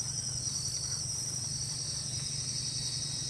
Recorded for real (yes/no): yes